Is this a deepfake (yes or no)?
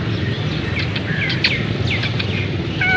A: no